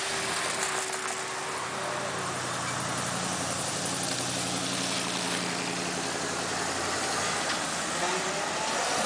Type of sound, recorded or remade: recorded